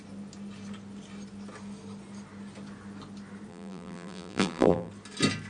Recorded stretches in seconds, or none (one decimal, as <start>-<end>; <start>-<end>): 0.0-3.5; 4.9-5.5